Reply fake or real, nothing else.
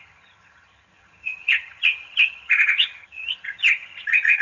fake